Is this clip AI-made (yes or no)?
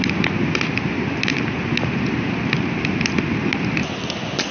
no